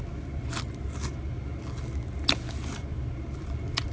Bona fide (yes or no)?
yes